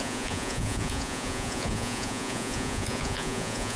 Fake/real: fake